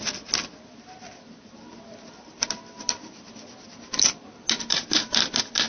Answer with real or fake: real